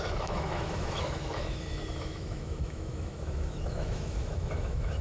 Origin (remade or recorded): remade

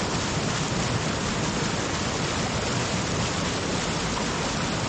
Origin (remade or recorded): recorded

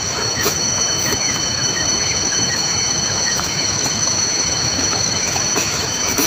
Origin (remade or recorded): remade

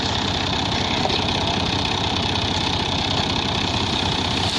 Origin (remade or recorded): recorded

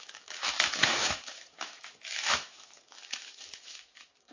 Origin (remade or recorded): remade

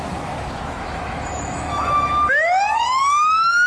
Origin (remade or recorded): remade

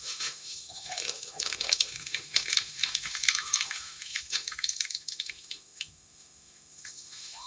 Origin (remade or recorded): remade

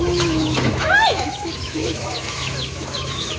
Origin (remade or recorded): remade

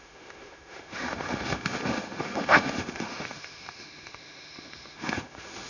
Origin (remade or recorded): remade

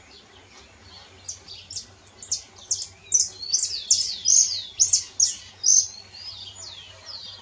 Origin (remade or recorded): recorded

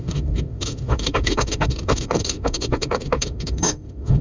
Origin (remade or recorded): remade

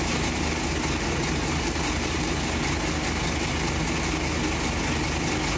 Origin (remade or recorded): recorded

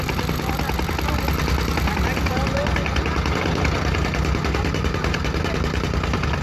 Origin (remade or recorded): recorded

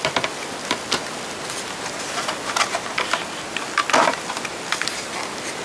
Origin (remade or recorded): recorded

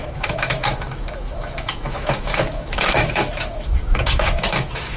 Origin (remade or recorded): remade